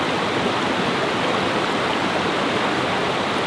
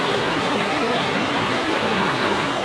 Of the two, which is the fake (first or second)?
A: second